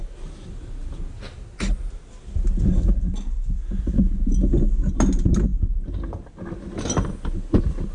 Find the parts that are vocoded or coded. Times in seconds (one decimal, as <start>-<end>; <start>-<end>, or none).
none